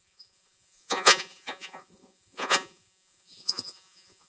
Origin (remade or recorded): remade